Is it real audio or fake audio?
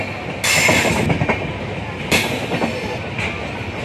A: real